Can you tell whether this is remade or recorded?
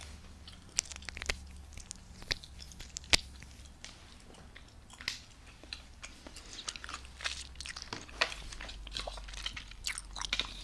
recorded